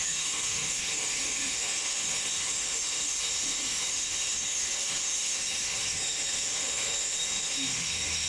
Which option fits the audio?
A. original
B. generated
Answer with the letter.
B